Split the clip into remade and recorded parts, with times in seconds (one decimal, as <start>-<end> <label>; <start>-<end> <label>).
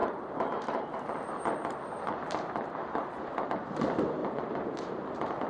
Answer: 0.0-3.1 remade; 3.1-4.2 recorded; 4.2-5.5 remade